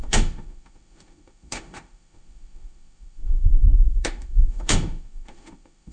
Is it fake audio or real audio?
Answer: fake